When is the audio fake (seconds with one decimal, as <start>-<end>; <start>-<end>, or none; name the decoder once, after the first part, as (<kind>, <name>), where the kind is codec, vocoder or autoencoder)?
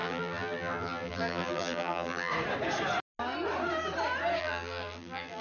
0.0-2.3 (vocoder, BigVGAN v2); 4.4-5.4